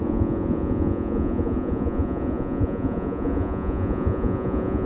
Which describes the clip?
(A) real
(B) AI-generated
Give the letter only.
B